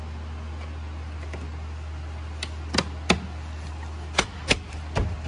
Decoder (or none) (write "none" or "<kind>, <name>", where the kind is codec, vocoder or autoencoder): none